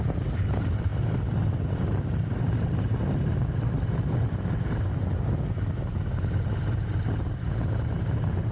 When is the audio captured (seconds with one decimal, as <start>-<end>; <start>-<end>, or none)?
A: 0.0-8.5